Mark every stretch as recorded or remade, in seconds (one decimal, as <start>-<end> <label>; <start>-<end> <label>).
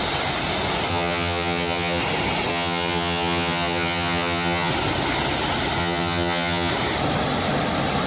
0.0-0.9 recorded; 0.9-2.0 remade; 2.0-2.5 recorded; 2.5-4.7 remade; 4.7-5.8 recorded; 5.8-6.7 remade; 6.7-8.1 recorded